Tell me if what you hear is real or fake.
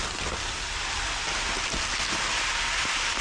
real